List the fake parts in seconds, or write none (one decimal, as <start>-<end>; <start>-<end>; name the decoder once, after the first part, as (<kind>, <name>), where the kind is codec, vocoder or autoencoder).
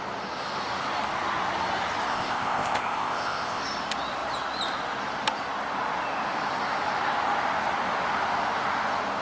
2.1-3.6 (codec, ZipCodec)